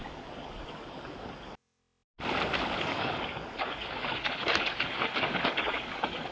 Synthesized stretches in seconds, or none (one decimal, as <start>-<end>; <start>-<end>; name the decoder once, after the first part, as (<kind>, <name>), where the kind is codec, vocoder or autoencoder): 0.0-1.8 (codec, DAC); 2.8-6.3